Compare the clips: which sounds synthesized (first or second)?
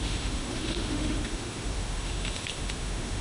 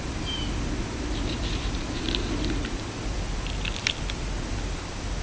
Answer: first